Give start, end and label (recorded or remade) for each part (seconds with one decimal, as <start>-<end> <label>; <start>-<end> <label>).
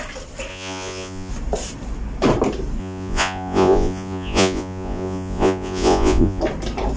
0.0-0.5 recorded; 0.5-1.3 remade; 1.3-2.8 recorded; 2.8-6.4 remade; 6.4-7.0 recorded